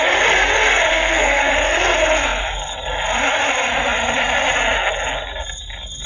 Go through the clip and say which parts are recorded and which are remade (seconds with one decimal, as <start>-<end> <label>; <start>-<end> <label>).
0.0-0.9 recorded; 0.9-1.5 remade; 1.5-6.1 recorded